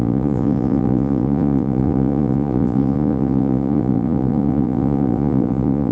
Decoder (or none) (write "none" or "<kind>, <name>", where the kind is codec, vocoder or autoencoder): vocoder, Vocos